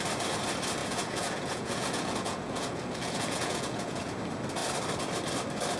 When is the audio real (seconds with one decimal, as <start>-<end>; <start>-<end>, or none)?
0.0-0.8; 4.1-5.8